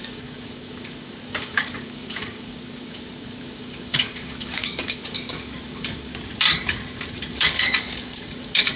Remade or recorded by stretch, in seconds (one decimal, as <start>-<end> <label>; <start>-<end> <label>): 0.0-6.1 remade; 6.1-7.3 recorded; 7.3-8.8 remade